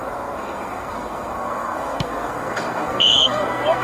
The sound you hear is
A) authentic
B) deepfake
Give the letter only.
B